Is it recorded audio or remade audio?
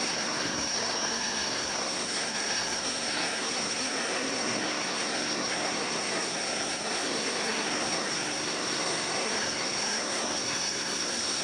remade